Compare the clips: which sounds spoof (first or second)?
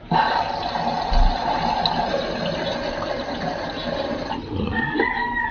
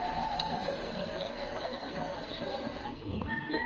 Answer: second